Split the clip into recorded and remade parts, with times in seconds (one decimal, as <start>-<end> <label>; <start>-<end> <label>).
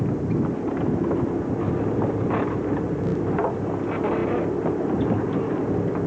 0.0-6.1 recorded